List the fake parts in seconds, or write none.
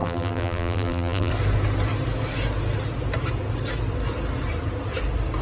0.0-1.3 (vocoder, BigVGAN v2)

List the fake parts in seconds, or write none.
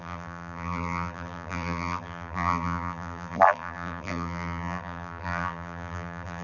0.0-6.4 (vocoder, BigVGAN v2)